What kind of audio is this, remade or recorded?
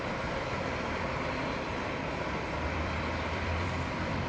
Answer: remade